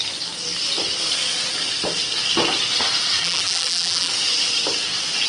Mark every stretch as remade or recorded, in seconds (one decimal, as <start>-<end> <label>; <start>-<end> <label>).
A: 0.0-3.2 recorded; 3.2-4.1 remade; 4.1-5.3 recorded